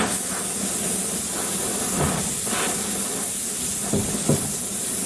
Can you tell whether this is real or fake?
real